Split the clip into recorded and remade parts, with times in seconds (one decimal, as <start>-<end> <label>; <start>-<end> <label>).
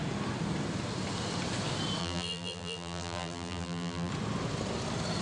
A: 0.0-2.0 recorded; 2.0-4.1 remade; 4.1-5.2 recorded